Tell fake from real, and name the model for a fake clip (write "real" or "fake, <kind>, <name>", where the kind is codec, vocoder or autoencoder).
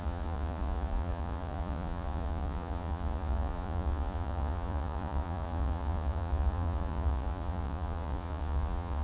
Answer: fake, vocoder, Vocos